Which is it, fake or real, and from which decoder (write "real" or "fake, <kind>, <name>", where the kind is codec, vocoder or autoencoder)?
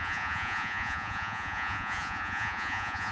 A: fake, vocoder, Vocos